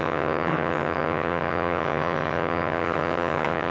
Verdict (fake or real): fake